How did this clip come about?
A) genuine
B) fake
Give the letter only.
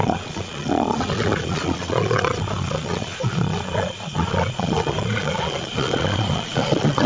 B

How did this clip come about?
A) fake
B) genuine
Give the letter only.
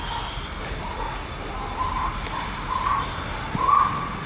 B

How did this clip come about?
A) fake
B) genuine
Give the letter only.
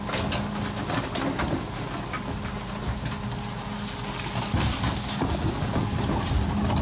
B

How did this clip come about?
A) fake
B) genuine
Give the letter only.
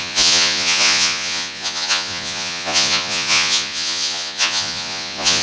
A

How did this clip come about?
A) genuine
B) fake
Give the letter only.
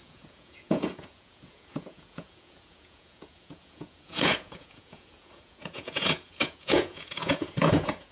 B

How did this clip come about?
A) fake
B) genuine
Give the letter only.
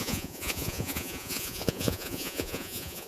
A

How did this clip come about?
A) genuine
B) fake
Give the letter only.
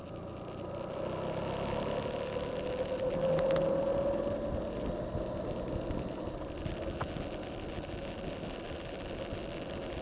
A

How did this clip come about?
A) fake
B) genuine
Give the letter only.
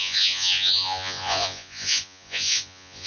A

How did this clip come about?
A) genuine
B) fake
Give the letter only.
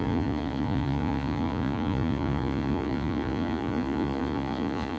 B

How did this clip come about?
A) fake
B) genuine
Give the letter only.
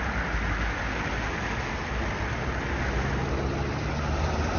B